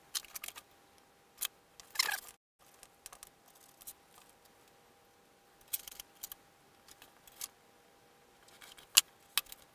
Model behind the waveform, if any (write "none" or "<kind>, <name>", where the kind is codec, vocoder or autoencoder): none